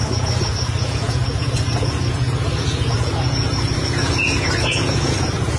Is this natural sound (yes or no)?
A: no